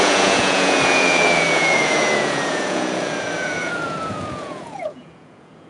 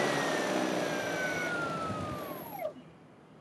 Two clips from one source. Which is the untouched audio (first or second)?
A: second